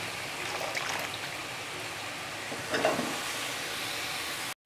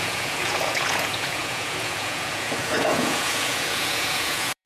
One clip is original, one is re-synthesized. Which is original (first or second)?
first